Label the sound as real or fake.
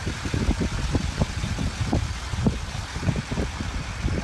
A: fake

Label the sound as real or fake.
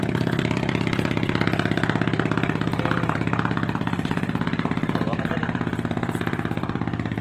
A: fake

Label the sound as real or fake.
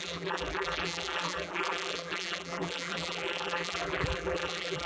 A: fake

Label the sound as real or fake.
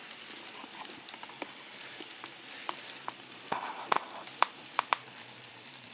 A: fake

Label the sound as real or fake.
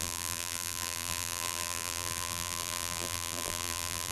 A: fake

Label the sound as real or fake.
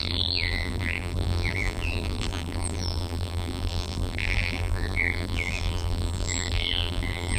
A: fake